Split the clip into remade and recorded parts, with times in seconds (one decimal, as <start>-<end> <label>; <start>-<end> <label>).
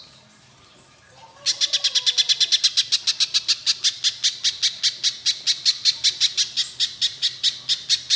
0.0-8.2 recorded